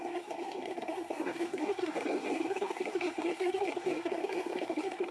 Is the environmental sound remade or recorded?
remade